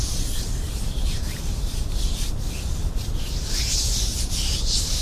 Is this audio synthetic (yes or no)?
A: yes